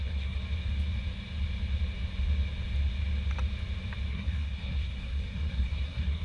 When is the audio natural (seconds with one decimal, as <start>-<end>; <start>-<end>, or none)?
0.4-4.1